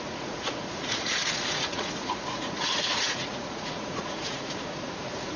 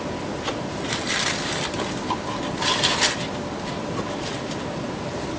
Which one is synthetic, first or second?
first